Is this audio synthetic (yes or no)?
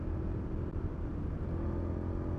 no